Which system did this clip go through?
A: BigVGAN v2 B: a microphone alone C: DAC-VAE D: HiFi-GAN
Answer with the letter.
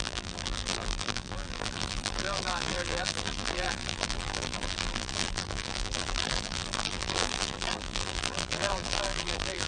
A